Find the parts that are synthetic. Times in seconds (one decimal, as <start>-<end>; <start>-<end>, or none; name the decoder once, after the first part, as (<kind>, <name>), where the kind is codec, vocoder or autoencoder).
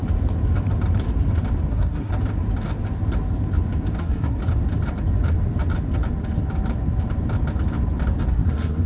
1.7-2.1 (codec, SNAC); 4.0-4.4; 8.3-8.9